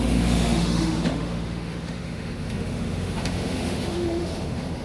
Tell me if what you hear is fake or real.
fake